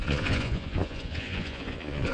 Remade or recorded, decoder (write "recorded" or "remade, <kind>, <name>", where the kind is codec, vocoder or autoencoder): remade, vocoder, Vocos